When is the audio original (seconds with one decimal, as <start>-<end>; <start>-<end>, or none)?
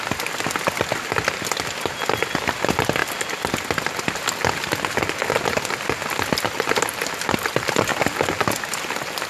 0.0-3.0; 4.0-9.3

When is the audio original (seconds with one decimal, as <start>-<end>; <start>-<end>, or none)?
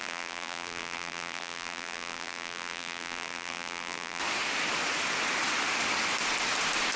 4.2-7.0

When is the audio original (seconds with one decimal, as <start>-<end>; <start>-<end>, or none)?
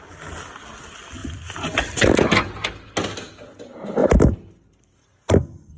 0.0-4.0; 4.5-5.8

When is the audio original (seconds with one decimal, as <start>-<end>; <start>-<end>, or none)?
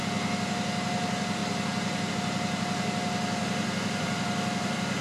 0.0-1.4; 2.1-3.4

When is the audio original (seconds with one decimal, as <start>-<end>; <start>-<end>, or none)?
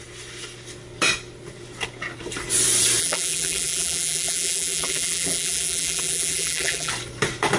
0.0-3.0; 6.9-7.6